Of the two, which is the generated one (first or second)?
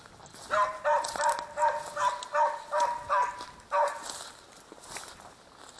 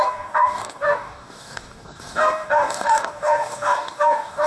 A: second